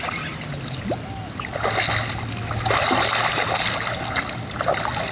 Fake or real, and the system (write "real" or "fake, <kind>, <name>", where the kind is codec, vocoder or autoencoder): real